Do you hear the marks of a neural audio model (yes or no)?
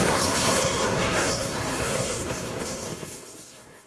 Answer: yes